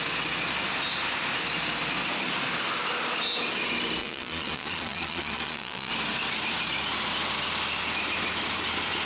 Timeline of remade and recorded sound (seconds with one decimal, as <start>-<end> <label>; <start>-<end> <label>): 0.0-4.0 recorded; 4.0-5.9 remade; 5.9-9.1 recorded